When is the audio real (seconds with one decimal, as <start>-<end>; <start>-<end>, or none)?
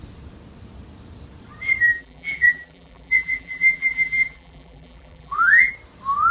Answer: 0.0-1.9; 5.7-6.3